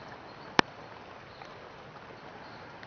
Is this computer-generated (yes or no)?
yes